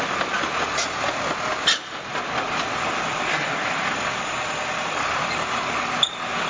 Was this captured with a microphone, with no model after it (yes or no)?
yes